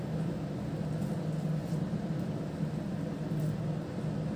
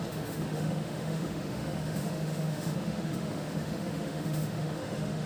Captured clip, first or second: first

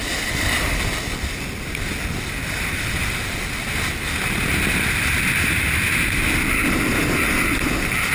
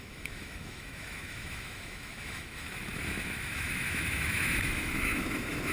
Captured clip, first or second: first